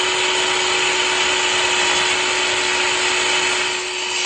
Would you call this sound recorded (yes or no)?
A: yes